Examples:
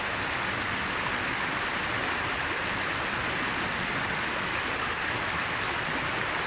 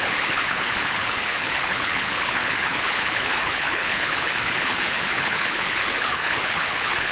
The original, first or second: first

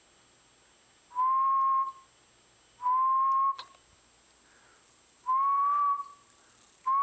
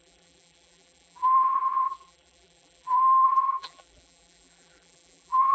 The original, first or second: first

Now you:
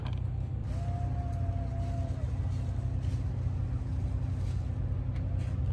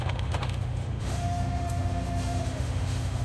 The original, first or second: first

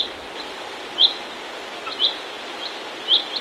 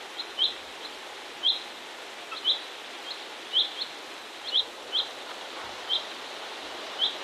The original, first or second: second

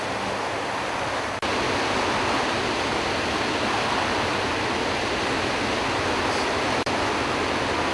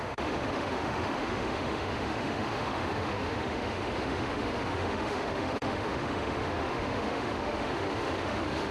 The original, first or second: first